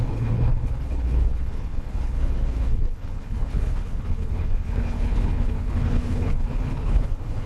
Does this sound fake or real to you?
fake